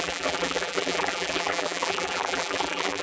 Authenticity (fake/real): fake